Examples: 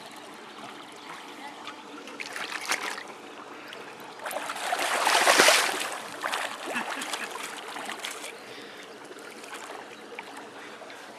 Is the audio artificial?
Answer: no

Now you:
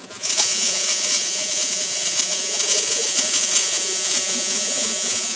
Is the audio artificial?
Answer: yes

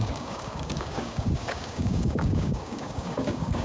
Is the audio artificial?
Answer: yes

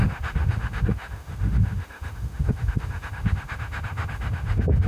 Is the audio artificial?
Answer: yes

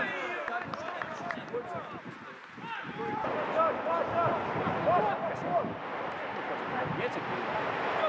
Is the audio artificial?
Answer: no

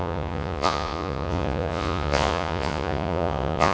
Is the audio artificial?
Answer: yes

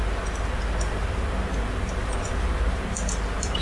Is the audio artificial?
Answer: no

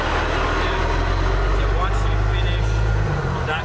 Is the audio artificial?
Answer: no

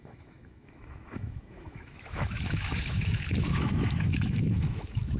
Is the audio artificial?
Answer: yes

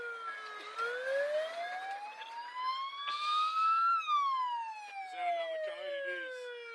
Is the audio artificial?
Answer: no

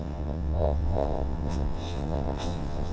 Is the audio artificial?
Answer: yes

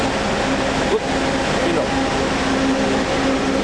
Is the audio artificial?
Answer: no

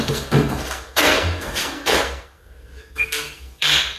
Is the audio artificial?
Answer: yes